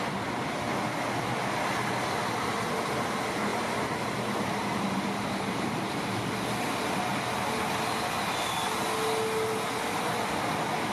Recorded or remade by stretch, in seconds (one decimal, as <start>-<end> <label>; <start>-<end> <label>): 0.0-3.5 recorded; 3.5-5.8 remade; 5.8-10.9 recorded